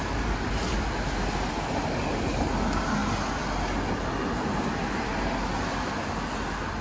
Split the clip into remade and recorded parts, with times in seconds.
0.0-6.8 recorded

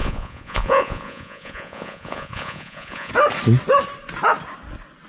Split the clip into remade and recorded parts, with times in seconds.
0.0-3.1 remade; 3.1-5.1 recorded

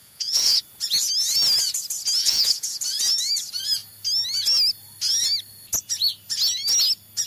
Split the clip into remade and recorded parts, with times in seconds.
0.0-0.6 remade; 0.6-2.2 recorded; 2.2-2.8 remade; 2.8-7.3 recorded